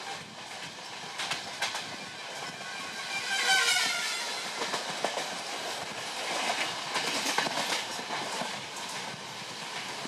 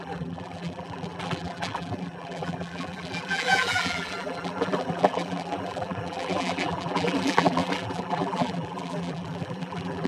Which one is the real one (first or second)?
first